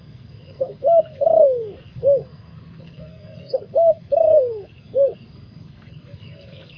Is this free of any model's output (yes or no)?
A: no